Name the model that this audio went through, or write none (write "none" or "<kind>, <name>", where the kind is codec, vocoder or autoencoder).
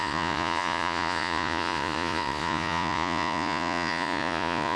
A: vocoder, Vocos